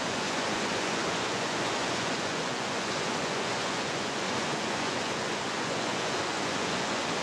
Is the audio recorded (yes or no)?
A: no